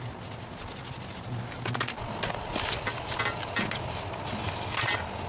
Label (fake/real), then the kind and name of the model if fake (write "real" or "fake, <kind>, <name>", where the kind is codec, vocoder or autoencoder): real